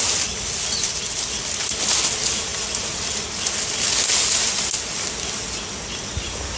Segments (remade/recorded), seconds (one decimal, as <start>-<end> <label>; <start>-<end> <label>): 0.0-6.6 recorded